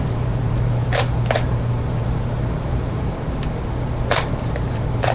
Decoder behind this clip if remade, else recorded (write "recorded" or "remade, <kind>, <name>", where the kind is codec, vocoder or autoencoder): remade, vocoder, BigVGAN v2